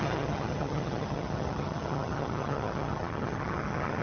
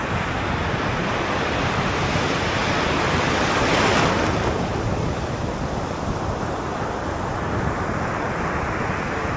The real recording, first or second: second